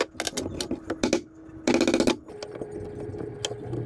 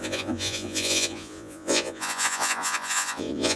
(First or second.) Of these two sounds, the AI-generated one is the second